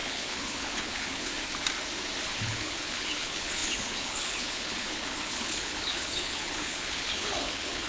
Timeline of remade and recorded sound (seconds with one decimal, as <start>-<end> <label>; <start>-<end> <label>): 0.0-1.3 remade; 1.3-2.4 recorded; 2.4-7.9 remade